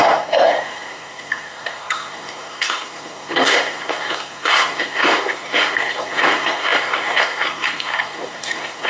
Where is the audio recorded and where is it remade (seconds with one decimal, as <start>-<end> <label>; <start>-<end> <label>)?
0.0-8.9 remade